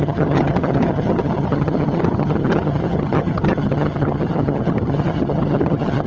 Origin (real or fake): fake